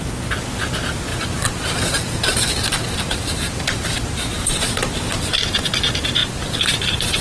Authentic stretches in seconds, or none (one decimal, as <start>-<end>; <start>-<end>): 0.0-1.1; 5.4-6.2